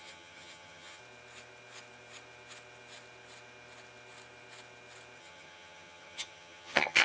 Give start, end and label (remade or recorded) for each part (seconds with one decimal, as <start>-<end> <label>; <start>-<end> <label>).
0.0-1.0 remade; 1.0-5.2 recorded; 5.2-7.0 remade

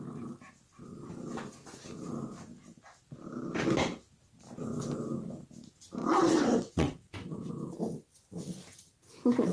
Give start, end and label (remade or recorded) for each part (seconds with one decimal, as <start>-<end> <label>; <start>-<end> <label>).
0.0-6.0 recorded; 6.0-7.5 remade; 7.5-9.5 recorded

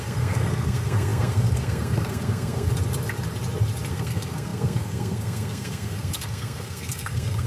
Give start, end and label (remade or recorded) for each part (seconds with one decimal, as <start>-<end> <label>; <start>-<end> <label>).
0.0-2.7 remade; 2.7-3.9 recorded; 3.9-7.5 remade